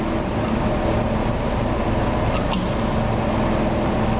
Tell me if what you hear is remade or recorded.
recorded